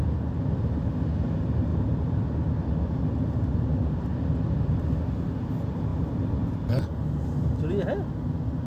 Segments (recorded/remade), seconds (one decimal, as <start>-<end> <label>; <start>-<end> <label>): 0.0-1.7 recorded; 1.7-2.4 remade; 2.4-5.9 recorded; 5.9-7.5 remade; 7.5-8.7 recorded